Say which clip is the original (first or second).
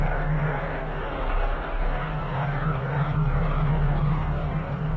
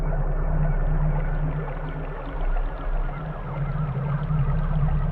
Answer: second